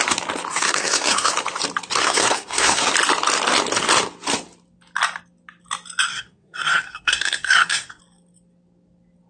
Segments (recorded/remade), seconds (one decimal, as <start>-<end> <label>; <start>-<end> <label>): 0.0-0.5 recorded; 0.5-1.3 remade; 1.3-2.0 recorded; 2.0-2.9 remade; 2.9-6.1 recorded; 6.1-8.0 remade; 8.0-9.3 recorded